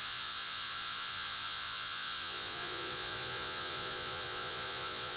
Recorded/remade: remade